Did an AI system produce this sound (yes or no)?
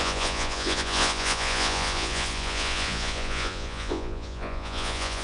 yes